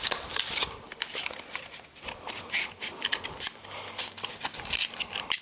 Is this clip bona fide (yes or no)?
yes